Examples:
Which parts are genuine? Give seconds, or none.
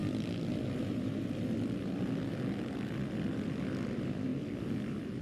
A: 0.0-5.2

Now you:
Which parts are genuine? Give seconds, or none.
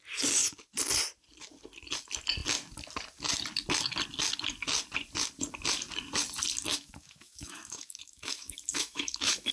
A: 0.0-6.7